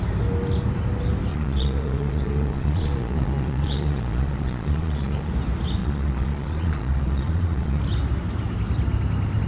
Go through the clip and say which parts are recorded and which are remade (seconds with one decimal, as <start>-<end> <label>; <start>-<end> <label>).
0.0-1.3 recorded; 1.3-5.3 remade; 5.3-5.8 recorded; 5.8-7.8 remade; 7.8-9.5 recorded